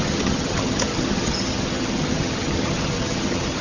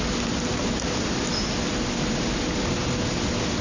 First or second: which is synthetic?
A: first